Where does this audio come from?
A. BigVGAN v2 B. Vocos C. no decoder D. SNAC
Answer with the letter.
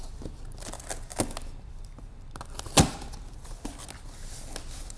C